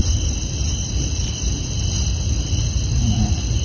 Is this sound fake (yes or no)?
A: no